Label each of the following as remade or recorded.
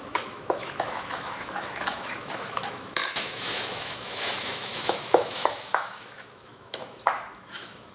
remade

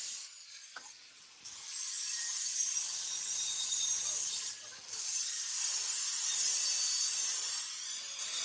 recorded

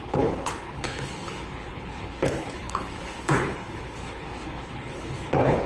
remade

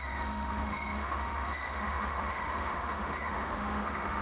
remade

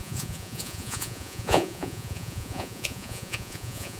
remade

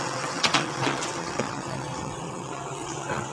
remade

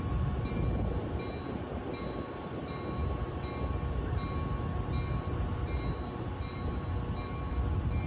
recorded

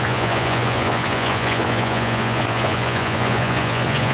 remade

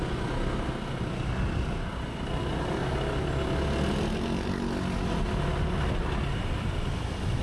recorded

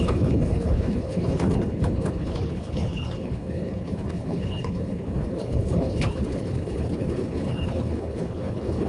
remade